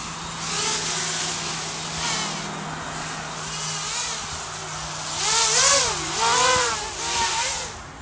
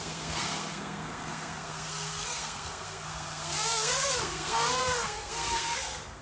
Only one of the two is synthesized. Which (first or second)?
second